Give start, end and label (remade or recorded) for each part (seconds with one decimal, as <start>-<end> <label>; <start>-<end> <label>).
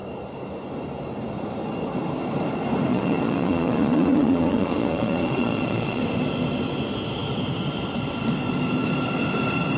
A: 0.0-2.9 recorded; 2.9-6.0 remade; 6.0-9.8 recorded